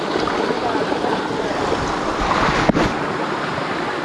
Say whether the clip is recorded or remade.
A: recorded